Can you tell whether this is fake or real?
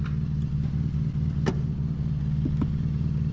real